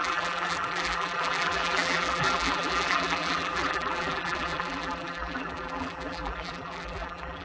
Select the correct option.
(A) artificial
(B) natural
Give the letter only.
A